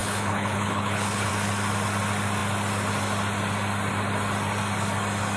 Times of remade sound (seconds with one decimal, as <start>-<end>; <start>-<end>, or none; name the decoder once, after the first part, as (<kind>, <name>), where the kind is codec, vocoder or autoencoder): 0.0-1.3 (codec, HILCodec)

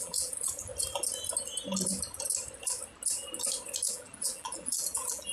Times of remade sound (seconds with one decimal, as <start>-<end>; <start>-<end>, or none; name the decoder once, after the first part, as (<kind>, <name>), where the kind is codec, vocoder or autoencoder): 0.0-0.7 (vocoder, BigVGAN v2); 3.9-5.3

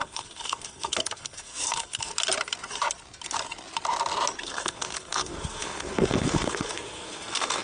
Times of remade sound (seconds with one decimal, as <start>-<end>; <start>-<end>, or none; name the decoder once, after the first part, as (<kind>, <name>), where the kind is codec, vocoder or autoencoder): 0.0-2.1 (codec, SNAC); 4.4-7.6

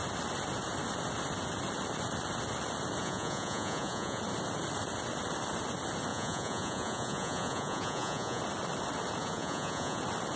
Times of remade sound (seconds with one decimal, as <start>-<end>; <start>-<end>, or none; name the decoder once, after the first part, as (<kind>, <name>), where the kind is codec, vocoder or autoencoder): 3.0-4.2 (vocoder, Vocos); 6.1-8.4; 9.2-10.0

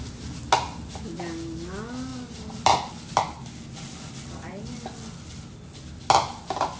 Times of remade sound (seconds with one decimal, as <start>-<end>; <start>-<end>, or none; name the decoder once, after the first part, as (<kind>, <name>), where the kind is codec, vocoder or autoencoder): 2.1-2.9 (vocoder, BigVGAN v2)

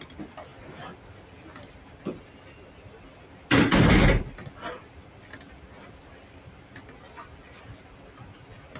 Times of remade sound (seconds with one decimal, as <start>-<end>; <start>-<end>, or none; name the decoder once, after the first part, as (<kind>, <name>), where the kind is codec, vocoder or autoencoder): none